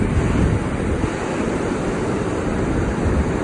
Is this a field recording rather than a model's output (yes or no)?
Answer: yes